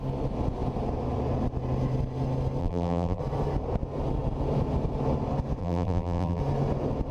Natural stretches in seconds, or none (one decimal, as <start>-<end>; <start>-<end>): 0.0-2.6; 3.2-5.6; 6.4-7.1